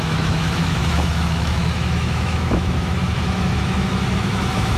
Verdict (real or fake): fake